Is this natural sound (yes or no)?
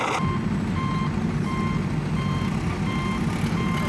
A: yes